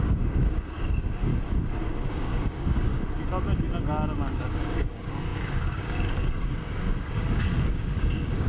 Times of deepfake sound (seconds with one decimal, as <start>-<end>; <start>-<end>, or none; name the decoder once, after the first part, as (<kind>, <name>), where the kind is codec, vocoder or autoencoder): 0.0-1.3 (codec, DAC); 2.1-2.9; 4.4-8.5